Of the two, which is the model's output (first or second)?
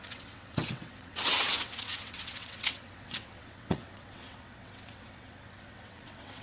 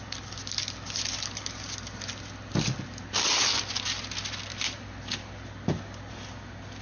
first